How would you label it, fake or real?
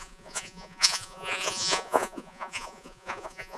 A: fake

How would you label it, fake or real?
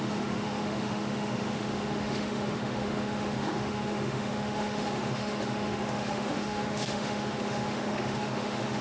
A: fake